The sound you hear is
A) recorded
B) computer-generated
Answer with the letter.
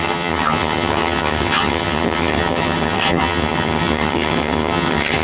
B